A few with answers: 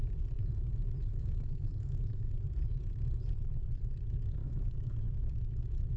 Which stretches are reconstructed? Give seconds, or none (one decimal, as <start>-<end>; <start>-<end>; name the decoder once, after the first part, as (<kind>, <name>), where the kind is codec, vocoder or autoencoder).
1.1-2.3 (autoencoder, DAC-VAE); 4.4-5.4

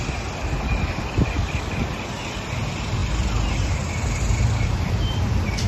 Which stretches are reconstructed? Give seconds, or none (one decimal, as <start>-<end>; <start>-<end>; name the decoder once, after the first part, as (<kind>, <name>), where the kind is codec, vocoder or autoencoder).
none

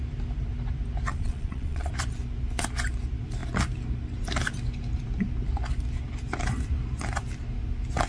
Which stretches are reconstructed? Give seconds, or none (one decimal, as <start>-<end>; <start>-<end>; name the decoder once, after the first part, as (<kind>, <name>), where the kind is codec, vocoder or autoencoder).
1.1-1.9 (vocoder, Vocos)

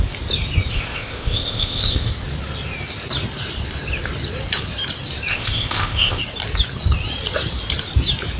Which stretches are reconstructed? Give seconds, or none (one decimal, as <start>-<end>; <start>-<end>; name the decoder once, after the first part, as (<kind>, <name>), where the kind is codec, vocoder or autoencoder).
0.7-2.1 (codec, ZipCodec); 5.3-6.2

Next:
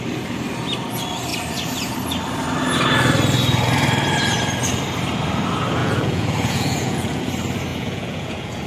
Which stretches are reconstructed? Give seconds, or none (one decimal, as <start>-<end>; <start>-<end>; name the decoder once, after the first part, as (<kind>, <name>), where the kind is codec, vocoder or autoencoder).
5.8-7.2 (vocoder, Vocos); 7.7-8.7

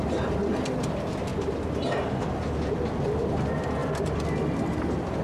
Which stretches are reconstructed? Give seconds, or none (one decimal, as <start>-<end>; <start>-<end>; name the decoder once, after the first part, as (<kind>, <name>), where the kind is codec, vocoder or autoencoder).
none

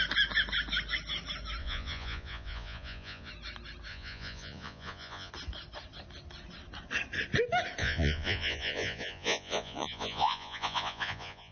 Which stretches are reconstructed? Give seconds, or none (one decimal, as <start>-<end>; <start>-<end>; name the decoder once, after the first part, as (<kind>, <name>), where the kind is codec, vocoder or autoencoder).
1.6-3.3 (vocoder, Vocos); 3.9-5.3; 7.8-11.5

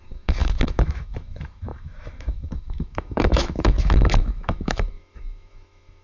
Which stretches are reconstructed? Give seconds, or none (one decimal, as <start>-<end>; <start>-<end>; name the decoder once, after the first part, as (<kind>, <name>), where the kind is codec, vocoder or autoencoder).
0.0-6.0 (autoencoder, DAC-VAE)